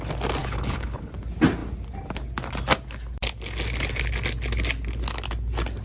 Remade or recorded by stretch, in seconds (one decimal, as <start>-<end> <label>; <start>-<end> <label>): 0.0-0.4 recorded; 0.4-1.1 remade; 1.1-5.8 recorded